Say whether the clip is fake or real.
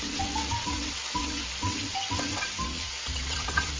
fake